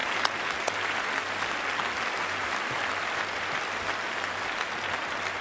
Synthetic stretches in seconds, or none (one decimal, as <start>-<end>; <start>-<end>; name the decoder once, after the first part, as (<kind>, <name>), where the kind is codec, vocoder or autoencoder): none